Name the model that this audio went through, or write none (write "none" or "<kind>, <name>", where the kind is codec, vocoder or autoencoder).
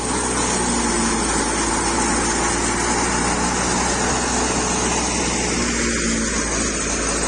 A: none